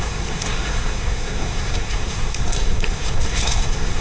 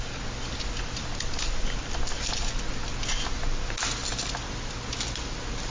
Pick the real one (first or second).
second